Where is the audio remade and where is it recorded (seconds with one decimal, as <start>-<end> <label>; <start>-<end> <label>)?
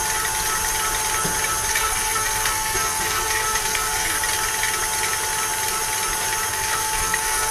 0.0-1.7 recorded; 1.7-4.2 remade; 4.2-6.5 recorded; 6.5-7.5 remade